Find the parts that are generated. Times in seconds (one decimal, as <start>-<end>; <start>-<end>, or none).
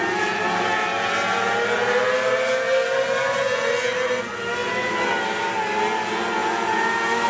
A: none